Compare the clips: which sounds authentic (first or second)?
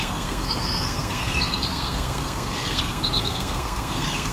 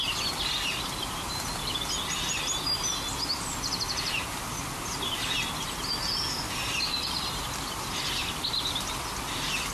second